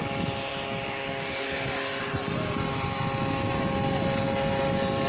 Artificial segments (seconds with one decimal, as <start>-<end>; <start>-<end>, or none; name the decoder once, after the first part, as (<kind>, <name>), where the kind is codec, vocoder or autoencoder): 0.5-2.0 (codec, DAC)